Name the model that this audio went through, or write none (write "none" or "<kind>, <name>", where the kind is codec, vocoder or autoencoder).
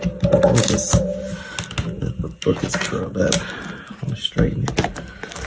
none